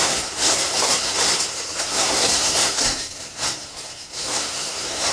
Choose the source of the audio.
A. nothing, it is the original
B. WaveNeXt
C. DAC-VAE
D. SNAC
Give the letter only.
D